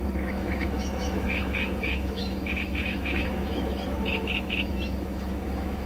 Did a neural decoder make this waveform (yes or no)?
yes